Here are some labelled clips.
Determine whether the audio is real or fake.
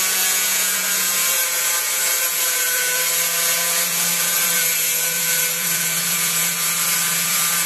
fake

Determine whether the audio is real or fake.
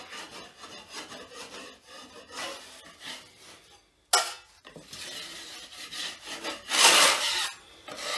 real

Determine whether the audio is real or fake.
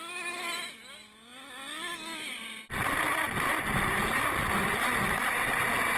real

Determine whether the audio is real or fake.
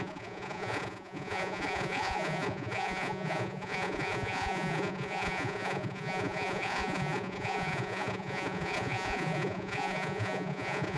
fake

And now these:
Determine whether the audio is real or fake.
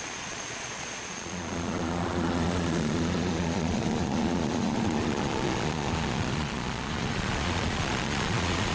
fake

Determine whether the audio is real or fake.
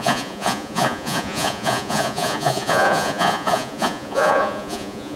fake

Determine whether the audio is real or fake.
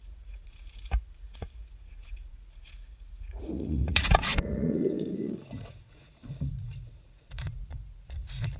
fake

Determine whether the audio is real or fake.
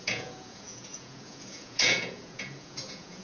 fake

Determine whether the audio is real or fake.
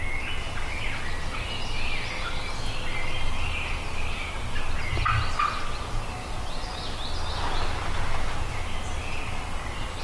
real